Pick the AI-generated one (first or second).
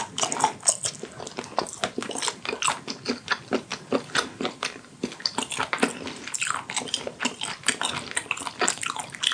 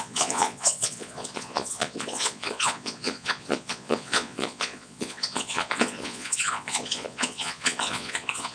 second